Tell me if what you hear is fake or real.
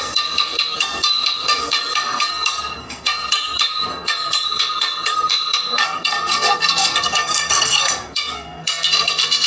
fake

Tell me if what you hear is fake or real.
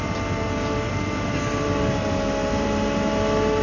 real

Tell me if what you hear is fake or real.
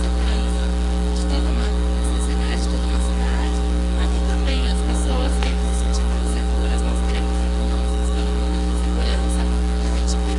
fake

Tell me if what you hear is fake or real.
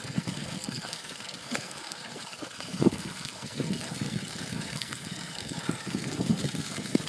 fake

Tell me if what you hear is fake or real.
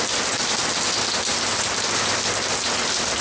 real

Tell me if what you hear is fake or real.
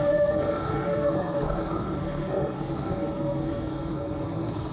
fake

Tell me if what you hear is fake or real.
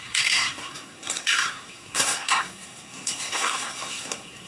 fake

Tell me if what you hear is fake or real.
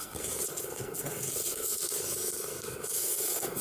fake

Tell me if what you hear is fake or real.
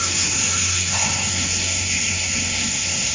fake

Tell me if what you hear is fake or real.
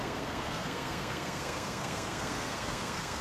fake